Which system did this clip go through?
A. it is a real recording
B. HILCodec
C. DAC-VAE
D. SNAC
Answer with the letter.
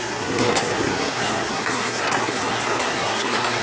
D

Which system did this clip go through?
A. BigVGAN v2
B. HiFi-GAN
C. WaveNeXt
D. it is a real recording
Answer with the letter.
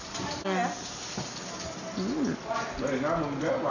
D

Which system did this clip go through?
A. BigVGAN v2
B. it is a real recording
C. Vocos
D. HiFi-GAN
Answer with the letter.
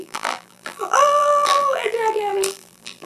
A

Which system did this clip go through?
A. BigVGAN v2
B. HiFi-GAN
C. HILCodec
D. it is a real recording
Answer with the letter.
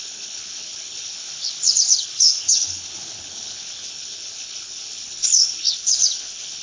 C